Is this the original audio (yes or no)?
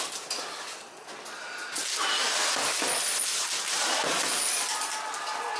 yes